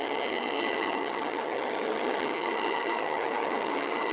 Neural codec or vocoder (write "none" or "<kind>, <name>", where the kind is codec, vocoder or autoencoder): vocoder, HiFi-GAN